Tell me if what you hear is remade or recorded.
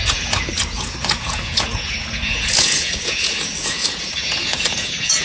remade